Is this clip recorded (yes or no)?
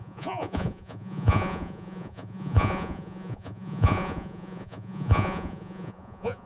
no